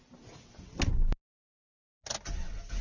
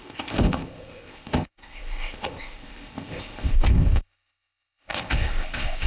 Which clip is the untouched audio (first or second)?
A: first